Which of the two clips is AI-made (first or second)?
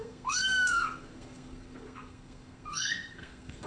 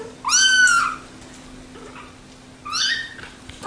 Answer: first